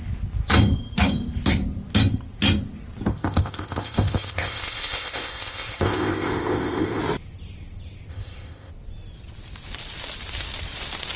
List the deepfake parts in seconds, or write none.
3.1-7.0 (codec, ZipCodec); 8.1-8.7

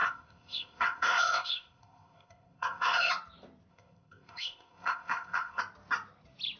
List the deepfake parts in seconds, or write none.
0.0-3.1 (codec, ZipCodec); 3.7-5.6

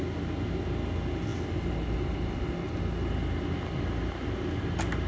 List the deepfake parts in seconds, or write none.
none

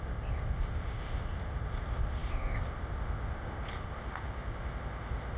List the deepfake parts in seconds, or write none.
0.0-5.4 (codec, ZipCodec)

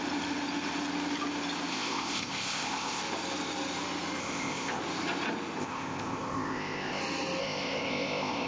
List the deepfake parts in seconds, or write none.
1.7-3.0 (codec, ZipCodec); 4.2-4.8; 5.6-7.0; 7.4-8.5

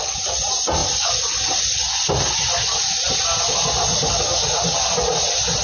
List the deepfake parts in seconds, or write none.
none